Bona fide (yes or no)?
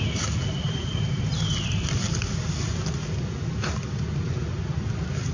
yes